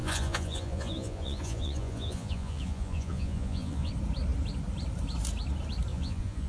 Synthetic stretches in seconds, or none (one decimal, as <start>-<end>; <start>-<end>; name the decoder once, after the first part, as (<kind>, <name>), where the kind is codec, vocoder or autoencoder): 0.0-3.9 (vocoder, Vocos); 5.9-6.5